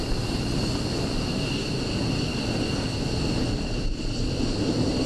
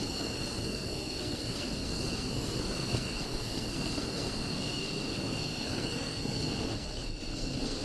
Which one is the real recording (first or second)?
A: first